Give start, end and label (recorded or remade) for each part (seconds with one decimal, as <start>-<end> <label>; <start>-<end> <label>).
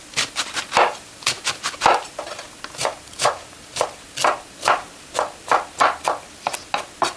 0.0-2.8 recorded; 2.8-3.5 remade; 3.5-7.2 recorded